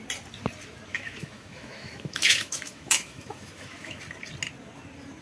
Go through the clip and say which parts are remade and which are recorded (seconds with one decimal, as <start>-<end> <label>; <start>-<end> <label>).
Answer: 0.0-0.9 recorded; 0.9-4.0 remade; 4.0-5.2 recorded